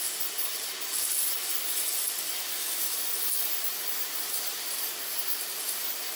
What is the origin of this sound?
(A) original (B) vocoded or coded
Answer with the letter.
A